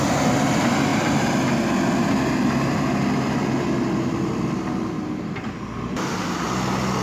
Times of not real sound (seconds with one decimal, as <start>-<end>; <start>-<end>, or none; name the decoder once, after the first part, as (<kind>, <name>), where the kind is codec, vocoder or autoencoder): none